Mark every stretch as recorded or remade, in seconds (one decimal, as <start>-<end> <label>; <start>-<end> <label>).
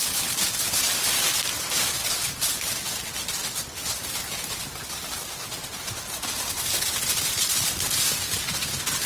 0.0-9.1 recorded